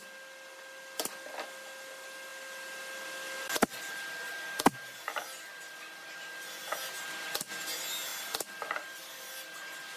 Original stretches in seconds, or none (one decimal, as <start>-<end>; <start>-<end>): 0.0-10.0